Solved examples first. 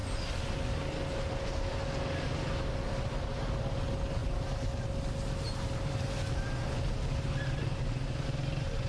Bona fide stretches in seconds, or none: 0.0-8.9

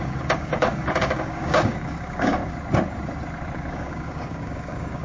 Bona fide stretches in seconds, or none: 2.4-3.7

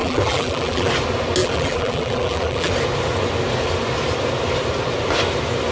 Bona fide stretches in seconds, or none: 0.9-1.4; 2.7-5.7

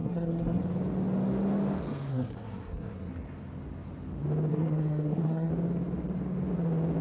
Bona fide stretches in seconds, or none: 0.6-2.1; 3.1-4.5; 5.5-7.0

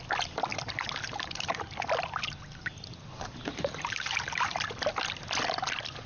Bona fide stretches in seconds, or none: 0.0-0.5; 1.7-3.5; 4.9-6.1

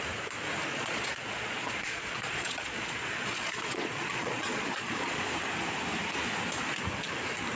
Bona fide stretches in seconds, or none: 0.0-0.7; 5.2-7.6